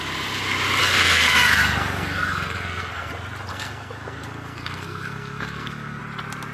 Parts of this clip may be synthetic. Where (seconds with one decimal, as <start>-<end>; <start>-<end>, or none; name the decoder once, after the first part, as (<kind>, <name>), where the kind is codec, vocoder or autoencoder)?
0.8-3.1 (codec, SNAC); 3.5-6.0

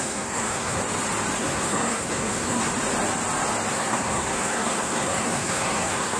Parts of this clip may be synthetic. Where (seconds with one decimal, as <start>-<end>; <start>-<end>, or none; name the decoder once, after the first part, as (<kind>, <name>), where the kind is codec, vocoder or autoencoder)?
0.0-0.8 (codec, SNAC); 1.4-2.7; 3.7-6.2